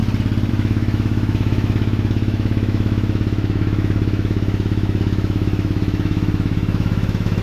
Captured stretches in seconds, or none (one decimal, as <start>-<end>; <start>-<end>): 0.0-0.5